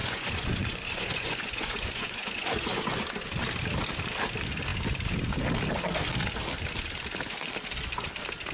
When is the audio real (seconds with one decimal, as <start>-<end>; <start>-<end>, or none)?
2.8-8.5